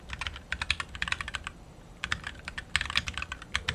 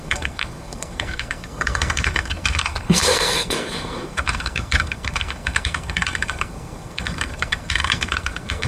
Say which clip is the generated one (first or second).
second